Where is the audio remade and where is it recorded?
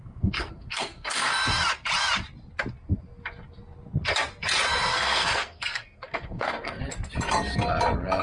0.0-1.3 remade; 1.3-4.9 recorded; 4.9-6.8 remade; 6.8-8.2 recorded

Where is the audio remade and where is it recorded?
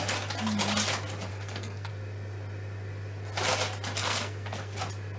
0.0-1.3 recorded; 1.3-1.9 remade; 1.9-4.0 recorded; 4.0-4.8 remade; 4.8-5.2 recorded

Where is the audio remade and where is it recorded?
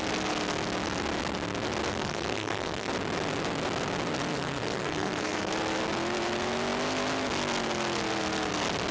0.0-1.9 recorded; 1.9-2.9 remade; 2.9-4.3 recorded; 4.3-5.5 remade; 5.5-8.9 recorded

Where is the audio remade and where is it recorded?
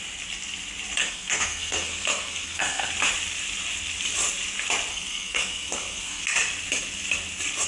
0.0-1.0 recorded; 1.0-2.9 remade; 2.9-4.9 recorded; 4.9-6.2 remade; 6.2-7.7 recorded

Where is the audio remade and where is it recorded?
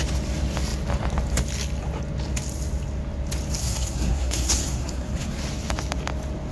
0.0-3.6 recorded; 3.6-5.4 remade; 5.4-6.5 recorded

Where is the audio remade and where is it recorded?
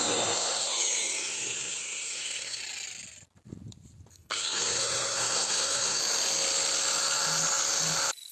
0.0-2.6 remade; 2.6-4.1 recorded; 4.1-6.0 remade; 6.0-8.3 recorded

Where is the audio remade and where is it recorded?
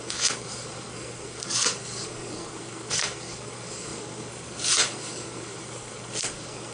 0.0-6.7 remade